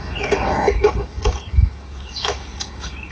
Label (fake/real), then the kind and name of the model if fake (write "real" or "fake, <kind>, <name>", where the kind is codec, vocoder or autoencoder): fake, codec, DAC